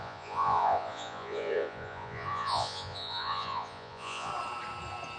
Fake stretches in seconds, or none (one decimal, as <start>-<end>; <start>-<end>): 0.0-4.3